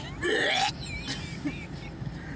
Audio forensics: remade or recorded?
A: recorded